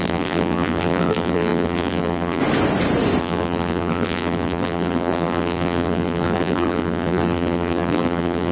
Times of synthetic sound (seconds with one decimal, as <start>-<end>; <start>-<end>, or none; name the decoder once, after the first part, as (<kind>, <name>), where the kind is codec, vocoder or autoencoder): 0.0-2.4 (vocoder, BigVGAN v2); 3.2-8.5